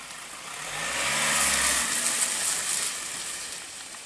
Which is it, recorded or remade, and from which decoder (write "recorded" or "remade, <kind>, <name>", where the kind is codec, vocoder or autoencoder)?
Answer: recorded